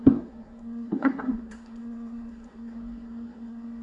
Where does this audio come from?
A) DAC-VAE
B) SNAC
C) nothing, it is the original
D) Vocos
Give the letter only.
B